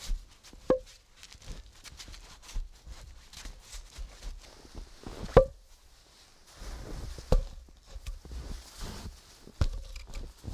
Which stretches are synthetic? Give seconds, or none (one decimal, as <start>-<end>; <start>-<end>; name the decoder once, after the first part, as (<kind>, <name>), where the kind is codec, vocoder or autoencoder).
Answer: none